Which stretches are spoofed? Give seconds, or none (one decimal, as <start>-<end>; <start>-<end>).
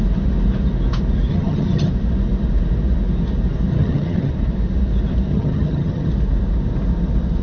1.3-1.9; 3.7-4.3; 5.3-6.1